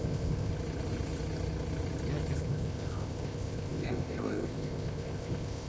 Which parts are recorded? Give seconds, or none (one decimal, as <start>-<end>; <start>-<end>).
0.5-2.4